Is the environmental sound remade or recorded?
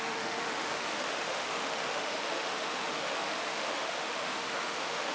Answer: remade